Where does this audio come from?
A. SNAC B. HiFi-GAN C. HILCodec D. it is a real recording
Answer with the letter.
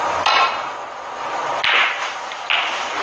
D